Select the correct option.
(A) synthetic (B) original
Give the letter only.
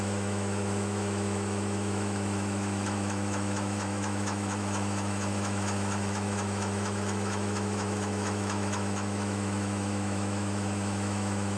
A